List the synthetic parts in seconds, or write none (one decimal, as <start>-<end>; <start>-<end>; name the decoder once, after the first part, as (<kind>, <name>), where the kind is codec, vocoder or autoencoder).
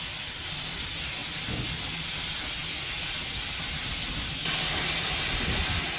none